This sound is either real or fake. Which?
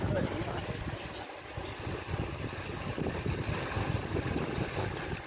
real